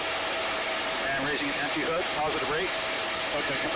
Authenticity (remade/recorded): recorded